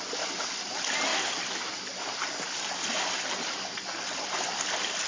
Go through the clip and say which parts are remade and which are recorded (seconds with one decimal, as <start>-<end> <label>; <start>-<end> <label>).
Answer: 0.0-5.1 recorded